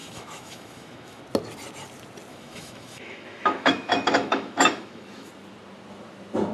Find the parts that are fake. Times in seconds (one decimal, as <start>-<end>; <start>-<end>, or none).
0.0-1.2; 2.3-5.3